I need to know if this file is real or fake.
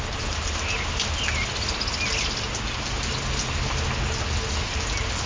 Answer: real